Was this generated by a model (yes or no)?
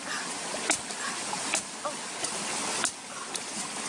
no